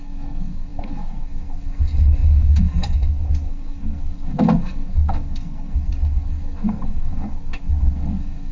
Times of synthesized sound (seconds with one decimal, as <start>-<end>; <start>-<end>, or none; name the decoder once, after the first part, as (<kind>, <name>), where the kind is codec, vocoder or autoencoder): 0.0-8.5 (codec, SNAC)